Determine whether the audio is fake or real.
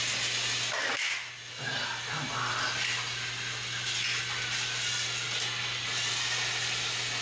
real